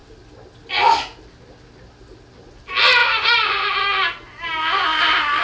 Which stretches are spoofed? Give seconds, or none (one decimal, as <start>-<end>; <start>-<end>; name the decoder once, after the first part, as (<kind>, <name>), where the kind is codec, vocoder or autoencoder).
3.0-3.8 (vocoder, BigVGAN v2)